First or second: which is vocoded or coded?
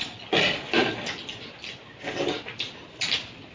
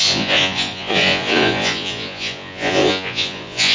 second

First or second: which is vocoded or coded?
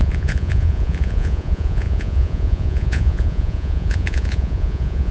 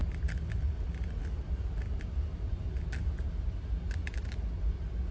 first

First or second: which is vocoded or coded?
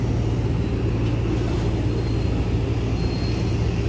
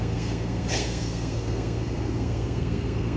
second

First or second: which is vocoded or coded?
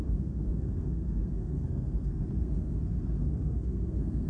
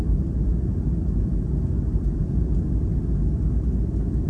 first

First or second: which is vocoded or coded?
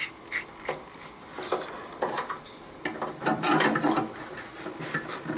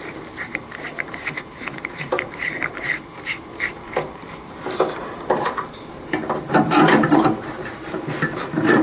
second